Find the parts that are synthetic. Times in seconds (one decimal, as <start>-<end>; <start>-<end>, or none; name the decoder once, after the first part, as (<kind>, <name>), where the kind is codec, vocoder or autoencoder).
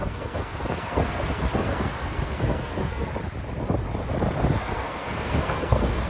0.0-3.1 (codec, SNAC); 4.6-6.1